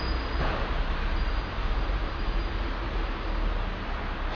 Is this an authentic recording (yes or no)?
yes